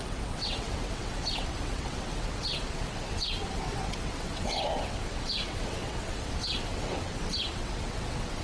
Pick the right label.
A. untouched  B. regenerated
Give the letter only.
B